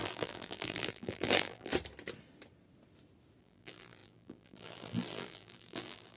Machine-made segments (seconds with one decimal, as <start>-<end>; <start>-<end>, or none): 0.0-1.7; 3.4-6.2

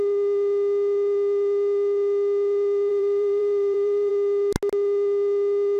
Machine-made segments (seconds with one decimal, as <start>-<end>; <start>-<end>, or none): 2.9-4.1

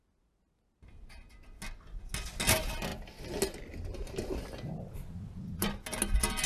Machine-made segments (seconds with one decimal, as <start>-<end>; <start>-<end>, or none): none

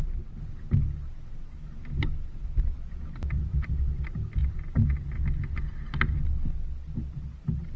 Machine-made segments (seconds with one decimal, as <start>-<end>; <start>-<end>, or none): none

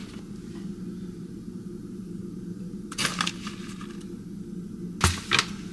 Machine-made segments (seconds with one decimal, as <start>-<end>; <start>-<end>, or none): 0.0-3.3

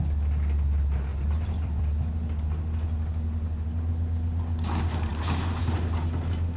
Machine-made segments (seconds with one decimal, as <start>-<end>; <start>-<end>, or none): 1.1-1.8

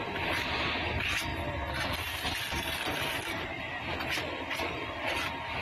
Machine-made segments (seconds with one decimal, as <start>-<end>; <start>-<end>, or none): 0.0-1.3; 4.7-5.6